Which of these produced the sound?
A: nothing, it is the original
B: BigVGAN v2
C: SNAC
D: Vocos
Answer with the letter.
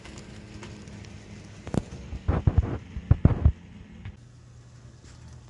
A